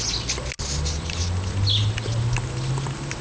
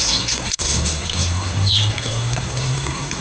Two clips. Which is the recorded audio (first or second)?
first